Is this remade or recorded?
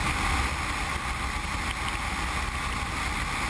recorded